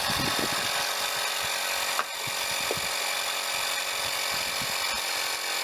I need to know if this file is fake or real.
real